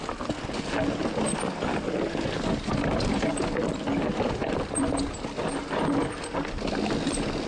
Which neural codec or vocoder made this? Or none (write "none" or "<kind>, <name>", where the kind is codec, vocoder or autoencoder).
none